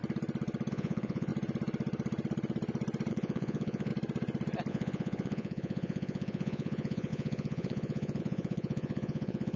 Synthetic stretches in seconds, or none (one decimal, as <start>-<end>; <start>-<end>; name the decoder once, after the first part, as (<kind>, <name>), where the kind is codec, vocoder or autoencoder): 0.7-1.3 (vocoder, Vocos); 3.1-3.9; 4.7-9.6